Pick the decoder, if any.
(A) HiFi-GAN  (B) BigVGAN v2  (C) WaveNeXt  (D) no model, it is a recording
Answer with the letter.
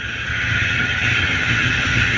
A